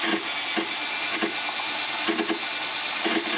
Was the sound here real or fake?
real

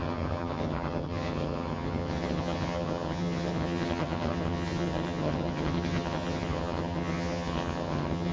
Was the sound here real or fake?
fake